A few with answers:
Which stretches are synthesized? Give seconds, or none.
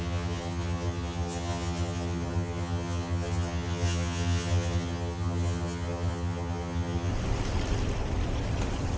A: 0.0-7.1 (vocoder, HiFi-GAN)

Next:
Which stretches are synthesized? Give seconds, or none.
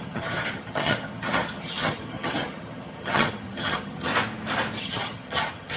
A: 0.0-4.1 (vocoder, HiFi-GAN); 4.8-5.8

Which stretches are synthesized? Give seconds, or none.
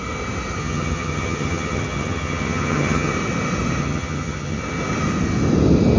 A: 0.6-3.1 (vocoder, HiFi-GAN); 3.8-4.6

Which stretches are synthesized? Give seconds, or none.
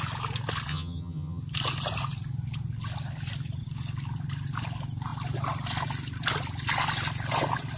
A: 0.7-1.4 (vocoder, HiFi-GAN)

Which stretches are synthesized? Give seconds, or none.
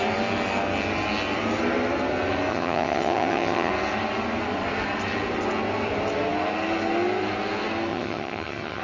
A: 2.5-3.7 (vocoder, HiFi-GAN); 7.9-8.8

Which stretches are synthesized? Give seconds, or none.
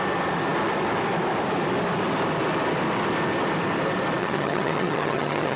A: 4.2-5.6 (vocoder, HiFi-GAN)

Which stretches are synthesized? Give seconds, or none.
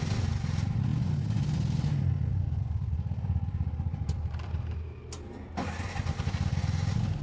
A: none